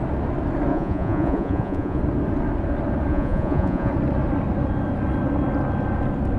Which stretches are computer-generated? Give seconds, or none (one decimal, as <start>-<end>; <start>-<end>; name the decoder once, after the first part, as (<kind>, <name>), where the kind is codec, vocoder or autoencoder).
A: 0.7-2.0 (vocoder, Vocos); 3.1-3.9